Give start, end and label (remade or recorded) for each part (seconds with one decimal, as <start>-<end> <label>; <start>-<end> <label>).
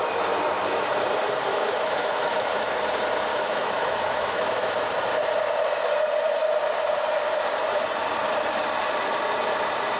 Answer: 0.0-1.5 recorded; 1.5-2.5 remade; 2.5-3.3 recorded; 3.3-4.5 remade; 4.5-10.0 recorded